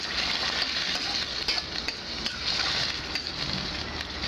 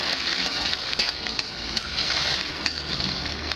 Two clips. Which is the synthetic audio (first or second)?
second